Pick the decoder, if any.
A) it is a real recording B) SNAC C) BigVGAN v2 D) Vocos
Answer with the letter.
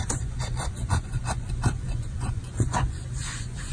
D